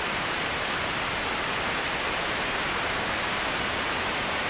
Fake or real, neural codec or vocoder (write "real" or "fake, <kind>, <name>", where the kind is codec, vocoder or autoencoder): real